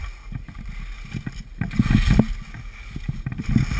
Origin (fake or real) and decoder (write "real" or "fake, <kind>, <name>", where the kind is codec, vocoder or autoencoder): real